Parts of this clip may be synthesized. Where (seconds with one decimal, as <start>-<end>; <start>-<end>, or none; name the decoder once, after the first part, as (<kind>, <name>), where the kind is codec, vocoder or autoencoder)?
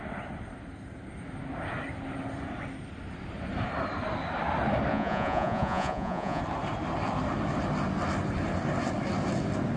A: 4.9-6.4 (vocoder, Vocos)